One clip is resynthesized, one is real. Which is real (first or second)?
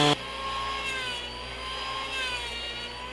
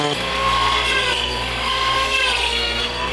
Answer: first